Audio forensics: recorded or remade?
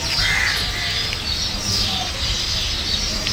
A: recorded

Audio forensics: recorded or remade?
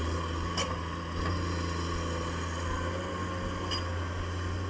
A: recorded